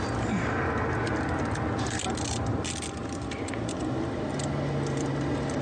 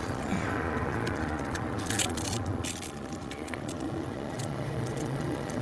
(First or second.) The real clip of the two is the first